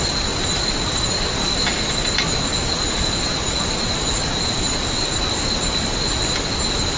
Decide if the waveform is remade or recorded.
recorded